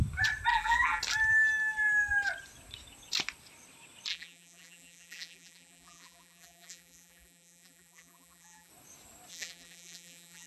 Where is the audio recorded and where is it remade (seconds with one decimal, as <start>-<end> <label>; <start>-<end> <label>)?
0.0-0.5 recorded; 0.5-1.0 remade; 1.0-4.1 recorded; 4.1-8.7 remade; 8.7-9.3 recorded; 9.3-10.5 remade